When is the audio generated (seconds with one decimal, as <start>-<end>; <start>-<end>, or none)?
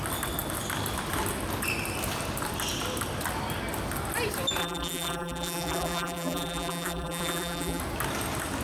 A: 4.6-7.8